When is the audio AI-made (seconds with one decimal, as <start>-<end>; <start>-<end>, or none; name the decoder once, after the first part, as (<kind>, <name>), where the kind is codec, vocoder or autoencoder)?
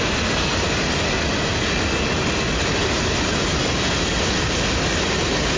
none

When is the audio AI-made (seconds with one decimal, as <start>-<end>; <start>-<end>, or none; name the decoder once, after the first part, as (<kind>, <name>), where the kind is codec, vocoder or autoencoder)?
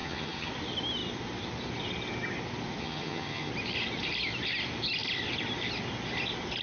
0.0-0.5 (vocoder, HiFi-GAN); 2.8-3.5